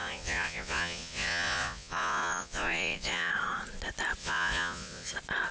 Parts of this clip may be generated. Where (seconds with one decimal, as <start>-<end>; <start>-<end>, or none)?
0.0-3.3; 4.2-5.1